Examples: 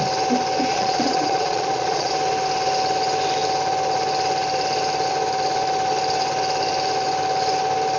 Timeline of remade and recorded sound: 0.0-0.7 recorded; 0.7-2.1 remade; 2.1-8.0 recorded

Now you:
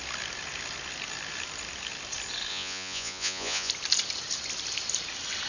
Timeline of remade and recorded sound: 0.0-2.5 recorded; 2.5-3.7 remade; 3.7-5.5 recorded

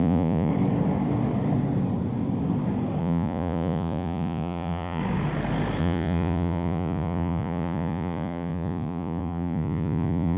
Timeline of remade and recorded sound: 0.0-0.5 remade; 0.5-3.0 recorded; 3.0-5.0 remade; 5.0-5.8 recorded; 5.8-10.4 remade

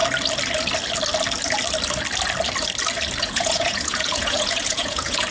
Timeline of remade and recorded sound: 0.0-3.2 recorded; 3.2-5.3 remade

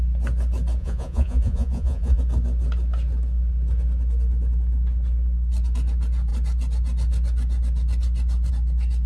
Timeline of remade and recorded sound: 0.0-0.8 recorded; 0.8-2.2 remade; 2.2-9.1 recorded